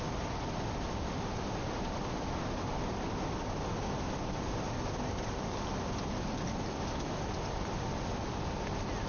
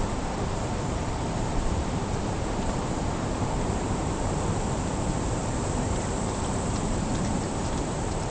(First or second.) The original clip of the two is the first